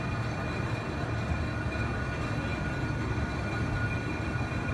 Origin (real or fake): real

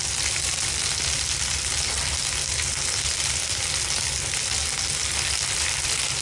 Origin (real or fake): real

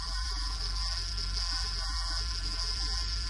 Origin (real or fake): fake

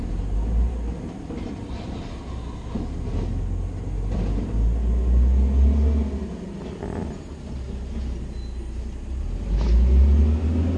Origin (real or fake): real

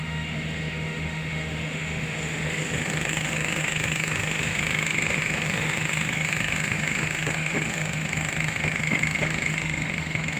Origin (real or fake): fake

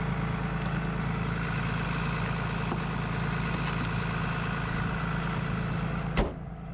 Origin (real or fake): real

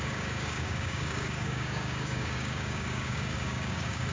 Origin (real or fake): fake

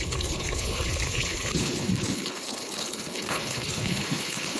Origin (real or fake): fake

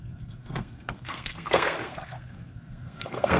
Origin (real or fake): fake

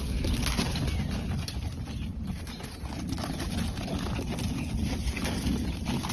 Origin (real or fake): real